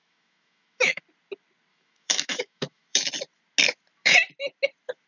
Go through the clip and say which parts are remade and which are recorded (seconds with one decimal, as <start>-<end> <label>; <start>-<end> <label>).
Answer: 0.0-1.0 remade; 1.0-1.7 recorded; 1.7-3.1 remade; 3.1-5.1 recorded